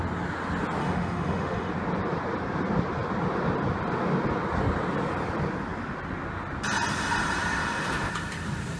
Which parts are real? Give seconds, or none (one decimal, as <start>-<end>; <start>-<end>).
0.0-0.8; 1.7-8.8